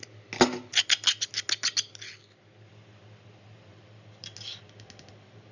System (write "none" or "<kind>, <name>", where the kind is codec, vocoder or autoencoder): none